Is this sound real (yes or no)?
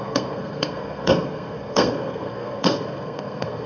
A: no